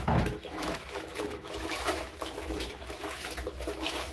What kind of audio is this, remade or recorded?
remade